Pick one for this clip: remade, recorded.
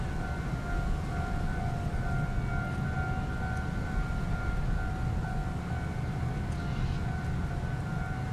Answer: recorded